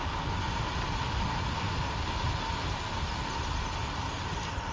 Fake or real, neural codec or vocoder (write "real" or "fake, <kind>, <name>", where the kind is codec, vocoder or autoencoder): real